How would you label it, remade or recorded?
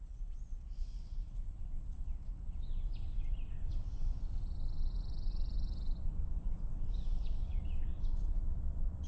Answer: remade